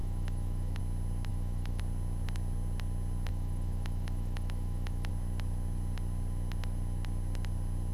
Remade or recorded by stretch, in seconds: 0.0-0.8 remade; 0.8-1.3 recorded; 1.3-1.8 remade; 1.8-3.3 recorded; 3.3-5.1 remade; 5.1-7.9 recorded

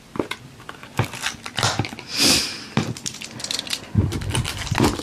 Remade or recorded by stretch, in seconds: 0.0-5.0 recorded

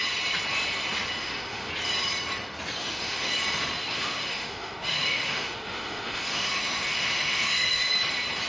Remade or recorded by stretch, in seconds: 0.0-1.2 recorded; 1.2-1.7 remade; 1.7-2.8 recorded; 2.8-3.3 remade; 3.3-3.9 recorded; 3.9-7.8 remade; 7.8-8.5 recorded

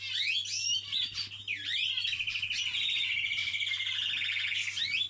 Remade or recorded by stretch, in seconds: 0.0-5.1 recorded

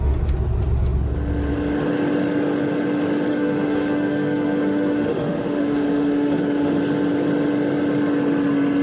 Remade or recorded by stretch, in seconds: 0.0-3.3 recorded; 3.3-6.8 remade; 6.8-8.8 recorded

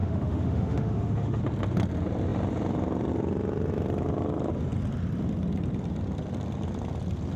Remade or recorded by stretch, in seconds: 0.0-1.4 remade; 1.4-7.4 recorded

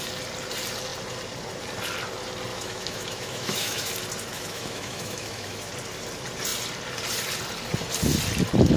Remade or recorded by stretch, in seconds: 0.0-2.5 recorded; 2.5-3.9 remade; 3.9-4.3 recorded; 4.3-5.7 remade; 5.7-8.8 recorded

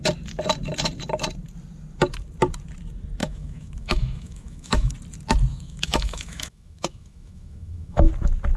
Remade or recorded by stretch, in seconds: 0.0-3.2 recorded; 3.2-4.9 remade; 4.9-5.5 recorded; 5.5-8.1 remade; 8.1-8.6 recorded